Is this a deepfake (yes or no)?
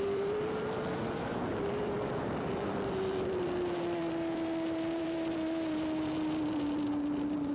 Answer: yes